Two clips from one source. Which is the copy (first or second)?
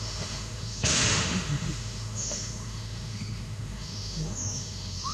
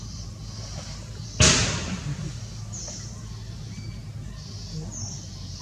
first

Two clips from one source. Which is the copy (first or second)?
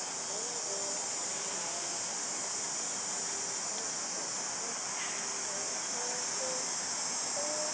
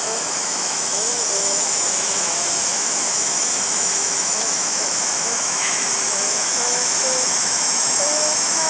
second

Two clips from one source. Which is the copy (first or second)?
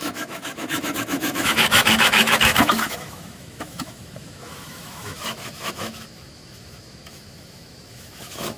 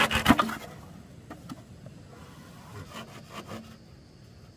first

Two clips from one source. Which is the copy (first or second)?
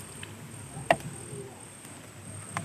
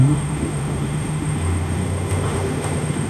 second